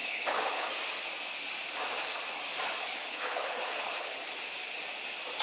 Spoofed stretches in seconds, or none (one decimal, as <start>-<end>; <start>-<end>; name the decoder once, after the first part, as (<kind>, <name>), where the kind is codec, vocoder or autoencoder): 0.0-0.7 (codec, HILCodec); 2.8-4.3